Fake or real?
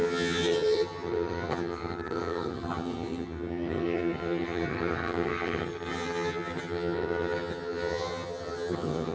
fake